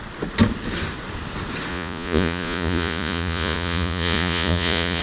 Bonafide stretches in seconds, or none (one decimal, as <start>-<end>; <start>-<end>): 0.0-1.7